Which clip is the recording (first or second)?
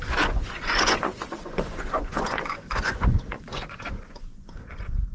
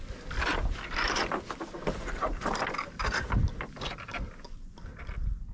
second